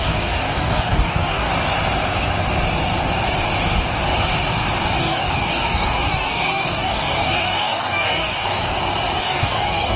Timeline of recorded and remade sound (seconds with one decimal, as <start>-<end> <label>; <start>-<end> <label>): 0.0-1.5 remade; 1.5-5.0 recorded; 5.0-8.6 remade; 8.6-9.2 recorded; 9.2-10.0 remade

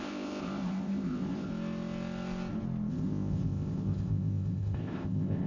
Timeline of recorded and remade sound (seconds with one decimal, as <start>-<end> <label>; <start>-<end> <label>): 0.0-1.5 remade; 1.5-2.9 recorded; 2.9-5.5 remade

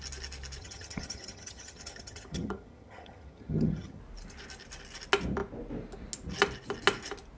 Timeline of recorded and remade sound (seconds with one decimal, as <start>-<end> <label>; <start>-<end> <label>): 0.0-0.6 recorded; 0.6-4.0 remade; 4.0-7.4 recorded